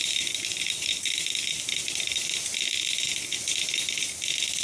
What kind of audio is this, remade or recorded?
recorded